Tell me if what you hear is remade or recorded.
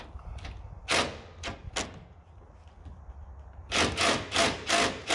recorded